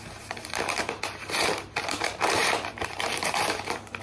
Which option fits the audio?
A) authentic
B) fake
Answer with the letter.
B